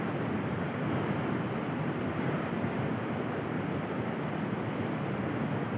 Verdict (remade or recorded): remade